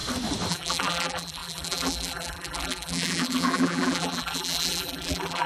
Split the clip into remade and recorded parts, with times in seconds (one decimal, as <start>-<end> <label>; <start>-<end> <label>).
0.0-0.5 recorded; 0.5-5.5 remade